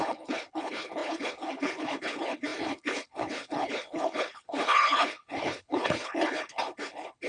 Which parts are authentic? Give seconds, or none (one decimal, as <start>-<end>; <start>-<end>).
none